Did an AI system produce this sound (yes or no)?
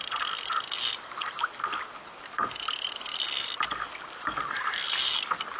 no